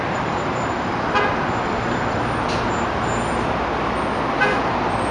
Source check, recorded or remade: recorded